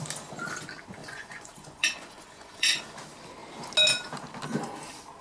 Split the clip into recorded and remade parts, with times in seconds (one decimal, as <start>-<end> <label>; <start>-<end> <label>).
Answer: 0.0-1.0 recorded; 1.0-2.8 remade; 2.8-5.2 recorded